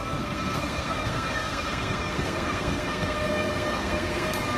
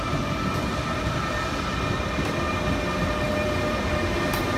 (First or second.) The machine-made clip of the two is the first